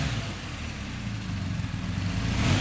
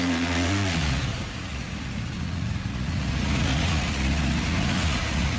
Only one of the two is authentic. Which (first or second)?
first